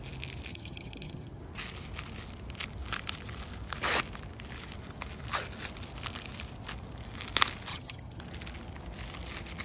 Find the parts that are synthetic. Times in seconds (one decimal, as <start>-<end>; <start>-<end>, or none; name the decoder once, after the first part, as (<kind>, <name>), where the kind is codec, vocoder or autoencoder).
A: 0.5-1.4 (vocoder, HiFi-GAN); 7.7-8.2

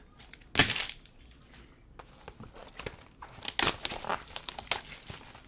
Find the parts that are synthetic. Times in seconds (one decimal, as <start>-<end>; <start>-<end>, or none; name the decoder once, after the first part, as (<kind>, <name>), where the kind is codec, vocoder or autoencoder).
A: none

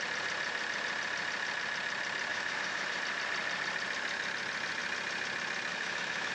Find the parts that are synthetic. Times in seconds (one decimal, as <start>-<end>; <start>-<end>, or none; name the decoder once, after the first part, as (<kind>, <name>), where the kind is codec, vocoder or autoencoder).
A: 2.3-3.0 (autoencoder, DAC-VAE); 5.7-6.3

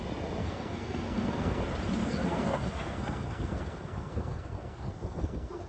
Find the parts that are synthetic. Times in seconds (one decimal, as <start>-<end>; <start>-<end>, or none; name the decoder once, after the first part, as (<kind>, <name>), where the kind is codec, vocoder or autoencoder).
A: 0.4-1.6 (codec, SNAC); 2.0-5.7

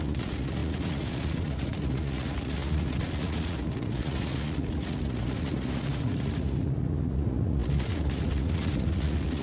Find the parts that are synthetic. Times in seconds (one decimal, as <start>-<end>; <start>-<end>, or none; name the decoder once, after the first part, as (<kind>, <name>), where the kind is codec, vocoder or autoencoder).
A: 0.0-9.4 (vocoder, Vocos)

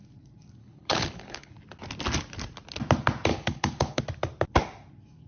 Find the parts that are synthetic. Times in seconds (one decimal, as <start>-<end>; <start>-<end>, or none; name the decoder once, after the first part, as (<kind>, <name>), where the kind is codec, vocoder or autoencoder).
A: 0.6-1.5 (codec, HILCodec); 3.3-4.0

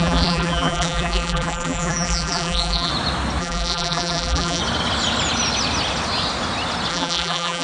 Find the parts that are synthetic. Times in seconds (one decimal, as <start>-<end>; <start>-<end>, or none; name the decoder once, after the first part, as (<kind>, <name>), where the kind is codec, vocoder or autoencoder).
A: 0.0-2.9 (vocoder, BigVGAN v2); 3.4-4.6; 6.9-7.6

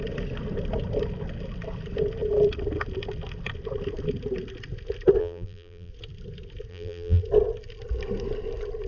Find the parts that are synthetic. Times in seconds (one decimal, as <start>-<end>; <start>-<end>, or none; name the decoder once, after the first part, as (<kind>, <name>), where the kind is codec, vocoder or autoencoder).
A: 5.2-5.9 (vocoder, BigVGAN v2); 6.7-7.2